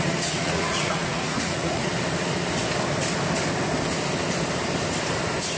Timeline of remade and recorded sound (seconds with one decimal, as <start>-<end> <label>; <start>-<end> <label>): 0.0-1.9 remade; 1.9-5.6 recorded